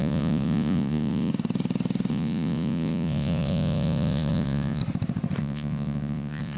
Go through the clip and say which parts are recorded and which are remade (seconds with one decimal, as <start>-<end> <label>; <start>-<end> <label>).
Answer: 0.0-1.3 remade; 1.3-2.1 recorded; 2.1-4.8 remade; 4.8-5.4 recorded; 5.4-6.6 remade